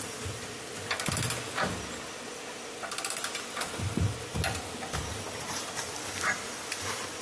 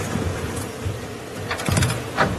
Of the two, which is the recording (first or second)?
first